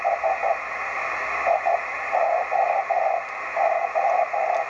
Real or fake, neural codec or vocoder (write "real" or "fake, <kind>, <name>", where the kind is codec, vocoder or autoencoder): real